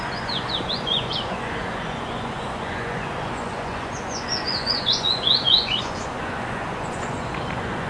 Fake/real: fake